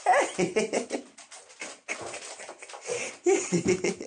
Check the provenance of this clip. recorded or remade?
recorded